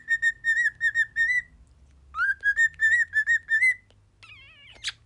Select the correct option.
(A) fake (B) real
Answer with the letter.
B